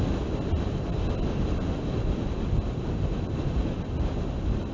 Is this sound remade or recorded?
recorded